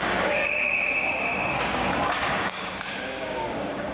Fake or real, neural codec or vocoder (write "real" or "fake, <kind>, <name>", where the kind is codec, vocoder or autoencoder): fake, codec, DAC